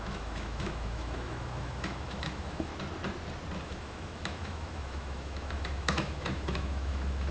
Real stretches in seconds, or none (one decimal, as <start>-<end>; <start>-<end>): 2.7-3.6